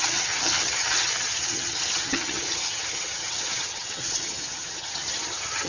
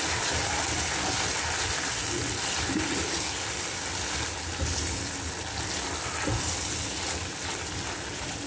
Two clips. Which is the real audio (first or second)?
second